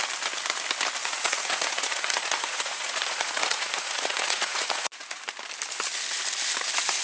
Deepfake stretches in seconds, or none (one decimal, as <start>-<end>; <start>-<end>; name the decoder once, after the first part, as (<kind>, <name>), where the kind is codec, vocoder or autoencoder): 1.0-5.2 (vocoder, Vocos)